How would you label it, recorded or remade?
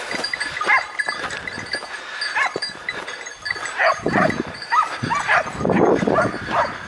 recorded